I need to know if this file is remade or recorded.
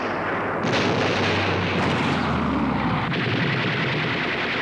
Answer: recorded